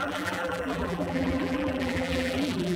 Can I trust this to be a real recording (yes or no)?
no